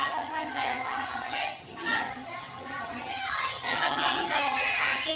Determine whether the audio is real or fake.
fake